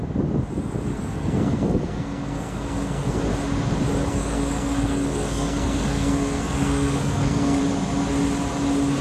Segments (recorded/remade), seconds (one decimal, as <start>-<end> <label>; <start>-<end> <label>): 0.0-0.9 recorded; 0.9-3.2 remade; 3.2-4.1 recorded; 4.1-7.6 remade; 7.6-9.0 recorded